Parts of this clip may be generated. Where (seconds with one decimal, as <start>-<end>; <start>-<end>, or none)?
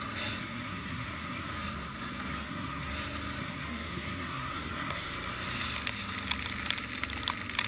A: 0.4-1.5; 2.3-2.9; 3.4-5.1